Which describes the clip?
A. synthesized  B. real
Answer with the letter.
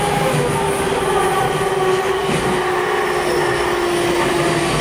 B